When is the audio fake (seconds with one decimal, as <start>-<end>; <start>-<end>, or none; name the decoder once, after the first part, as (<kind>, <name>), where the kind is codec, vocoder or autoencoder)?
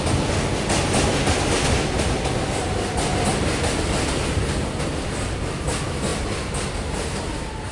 none